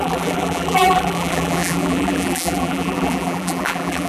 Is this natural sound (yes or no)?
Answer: no